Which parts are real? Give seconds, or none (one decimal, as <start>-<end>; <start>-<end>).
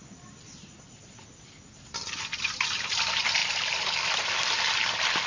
0.0-5.3